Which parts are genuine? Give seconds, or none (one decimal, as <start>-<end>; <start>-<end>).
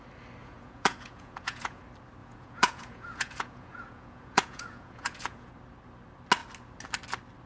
0.0-0.4; 1.8-2.2; 5.5-7.5